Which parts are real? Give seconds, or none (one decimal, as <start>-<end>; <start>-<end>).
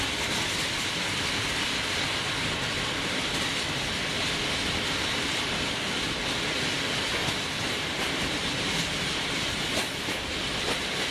0.0-7.2; 9.6-11.1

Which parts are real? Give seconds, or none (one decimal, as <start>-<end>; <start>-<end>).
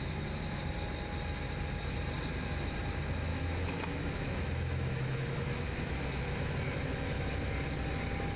0.0-3.3; 7.3-8.4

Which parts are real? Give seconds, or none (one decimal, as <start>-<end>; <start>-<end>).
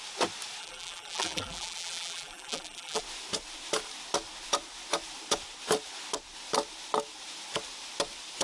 0.0-0.6; 3.0-8.4